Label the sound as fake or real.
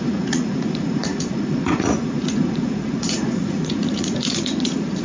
fake